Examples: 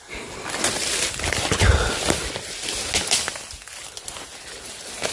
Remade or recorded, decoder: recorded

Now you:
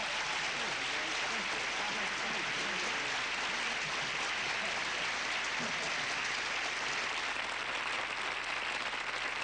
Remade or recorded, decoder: recorded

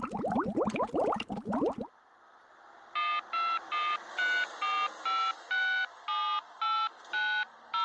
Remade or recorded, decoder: recorded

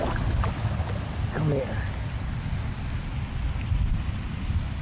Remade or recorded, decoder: recorded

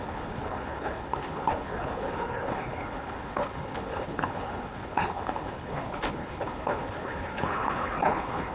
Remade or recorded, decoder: remade, codec, HILCodec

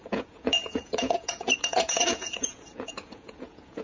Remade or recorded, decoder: remade, vocoder, Vocos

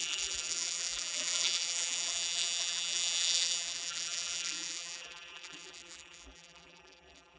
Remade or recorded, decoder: remade, vocoder, BigVGAN v2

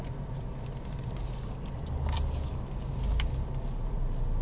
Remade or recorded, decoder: recorded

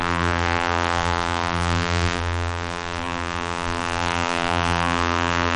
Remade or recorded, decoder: remade, vocoder, BigVGAN v2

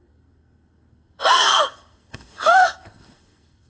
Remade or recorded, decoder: remade, codec, SNAC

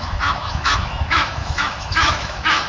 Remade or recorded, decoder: remade, autoencoder, DAC-VAE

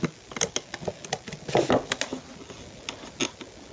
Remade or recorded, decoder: recorded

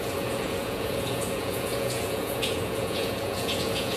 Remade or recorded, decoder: remade, vocoder, Vocos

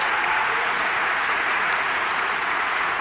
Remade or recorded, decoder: remade, vocoder, Vocos